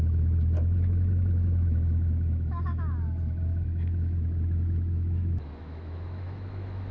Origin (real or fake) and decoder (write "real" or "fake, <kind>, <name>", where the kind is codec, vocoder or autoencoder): fake, autoencoder, DAC-VAE